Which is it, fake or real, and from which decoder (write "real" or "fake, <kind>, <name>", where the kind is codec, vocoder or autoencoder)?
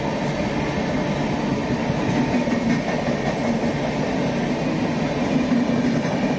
real